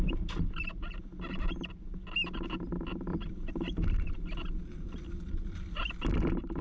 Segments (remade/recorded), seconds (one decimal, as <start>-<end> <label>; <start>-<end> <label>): 0.0-6.6 recorded